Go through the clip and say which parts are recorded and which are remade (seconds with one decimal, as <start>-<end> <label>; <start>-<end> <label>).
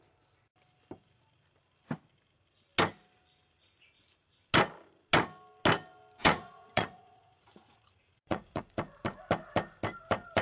0.0-6.2 recorded; 6.2-8.6 remade; 8.6-10.4 recorded